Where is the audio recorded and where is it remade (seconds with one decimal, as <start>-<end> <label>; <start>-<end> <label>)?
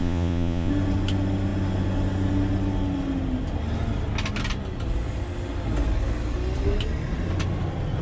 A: 0.0-0.7 remade; 0.7-8.0 recorded